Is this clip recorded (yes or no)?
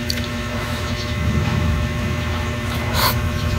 no